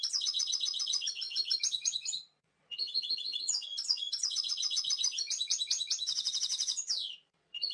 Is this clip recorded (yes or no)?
no